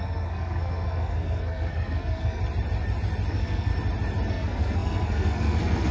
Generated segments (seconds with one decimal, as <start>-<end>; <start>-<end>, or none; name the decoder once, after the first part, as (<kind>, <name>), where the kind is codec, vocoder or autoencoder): 0.0-2.4 (codec, SNAC); 3.3-3.7; 4.3-5.9